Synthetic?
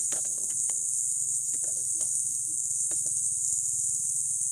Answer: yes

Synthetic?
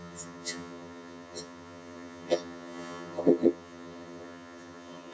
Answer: yes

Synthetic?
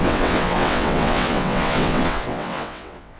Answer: yes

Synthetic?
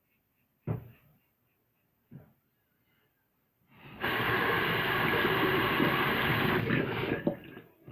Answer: no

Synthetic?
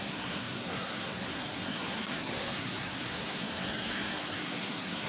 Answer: yes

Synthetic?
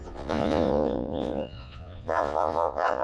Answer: yes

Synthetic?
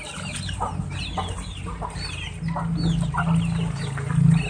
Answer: no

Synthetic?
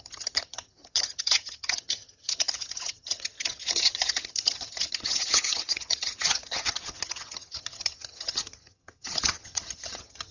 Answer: yes